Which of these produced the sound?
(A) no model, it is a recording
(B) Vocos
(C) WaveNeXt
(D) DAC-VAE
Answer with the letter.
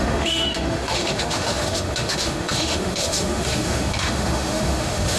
D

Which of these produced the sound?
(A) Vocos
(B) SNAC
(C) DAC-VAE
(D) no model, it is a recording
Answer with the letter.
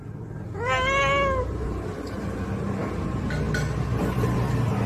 D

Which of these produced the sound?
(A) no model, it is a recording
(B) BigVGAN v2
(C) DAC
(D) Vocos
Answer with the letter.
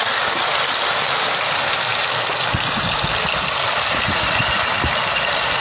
A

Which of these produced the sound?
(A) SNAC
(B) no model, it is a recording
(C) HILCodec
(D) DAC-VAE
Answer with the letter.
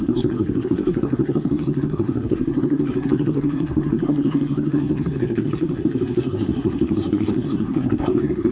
A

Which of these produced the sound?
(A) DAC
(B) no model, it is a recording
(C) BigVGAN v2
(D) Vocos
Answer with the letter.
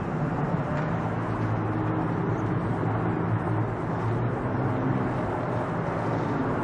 B